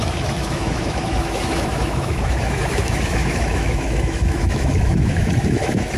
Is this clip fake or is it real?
fake